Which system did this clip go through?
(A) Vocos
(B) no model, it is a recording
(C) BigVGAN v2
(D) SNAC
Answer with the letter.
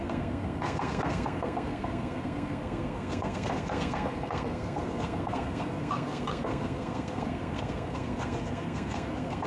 D